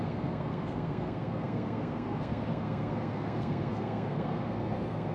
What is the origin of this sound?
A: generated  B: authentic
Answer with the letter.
A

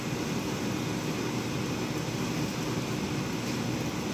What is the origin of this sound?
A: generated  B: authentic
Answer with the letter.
B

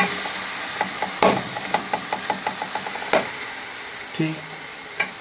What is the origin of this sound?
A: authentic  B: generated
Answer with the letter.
A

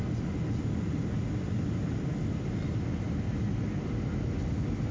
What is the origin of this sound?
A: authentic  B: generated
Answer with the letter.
A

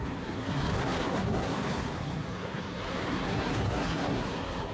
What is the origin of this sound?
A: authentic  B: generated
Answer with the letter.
B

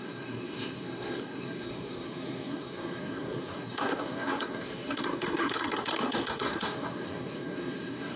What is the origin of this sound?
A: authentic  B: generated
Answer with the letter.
B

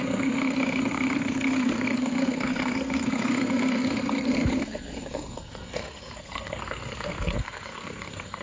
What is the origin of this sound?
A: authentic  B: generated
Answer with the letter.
B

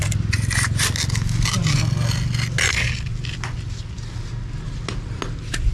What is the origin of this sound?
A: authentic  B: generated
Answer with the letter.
A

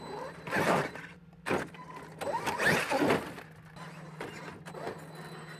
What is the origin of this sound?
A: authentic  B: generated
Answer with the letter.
A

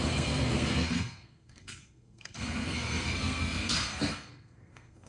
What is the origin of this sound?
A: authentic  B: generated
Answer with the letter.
B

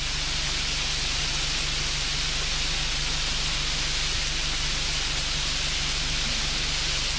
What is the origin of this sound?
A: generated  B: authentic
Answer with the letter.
B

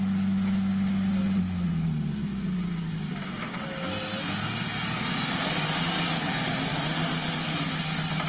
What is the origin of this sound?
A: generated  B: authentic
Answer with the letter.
B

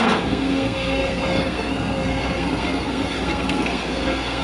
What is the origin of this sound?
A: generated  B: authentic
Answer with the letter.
A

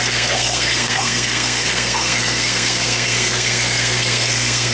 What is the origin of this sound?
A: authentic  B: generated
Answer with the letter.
B